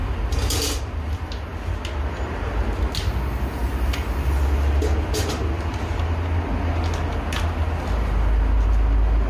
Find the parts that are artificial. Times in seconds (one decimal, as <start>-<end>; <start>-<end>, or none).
none